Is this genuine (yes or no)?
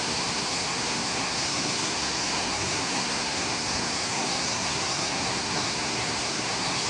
no